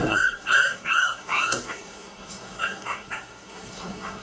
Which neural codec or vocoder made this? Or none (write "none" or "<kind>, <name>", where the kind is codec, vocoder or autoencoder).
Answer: codec, SNAC